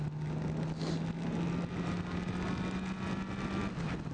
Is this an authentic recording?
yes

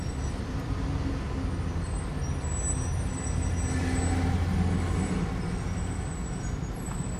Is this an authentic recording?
yes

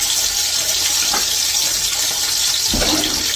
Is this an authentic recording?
yes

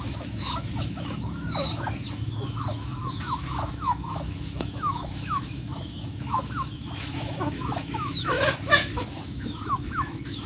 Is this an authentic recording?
no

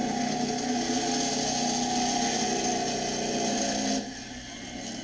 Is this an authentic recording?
yes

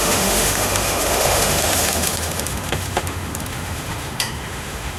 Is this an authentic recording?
no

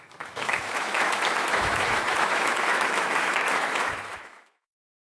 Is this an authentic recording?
no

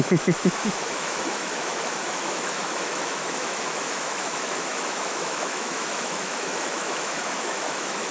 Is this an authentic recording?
no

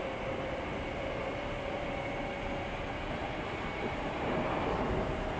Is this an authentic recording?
yes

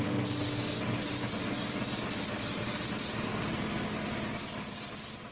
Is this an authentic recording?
yes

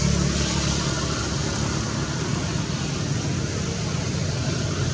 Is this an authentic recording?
yes